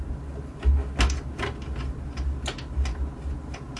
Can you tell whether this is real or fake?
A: real